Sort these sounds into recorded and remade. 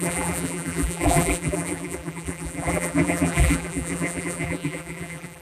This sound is remade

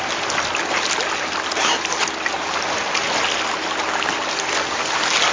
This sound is recorded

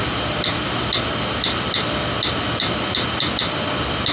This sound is recorded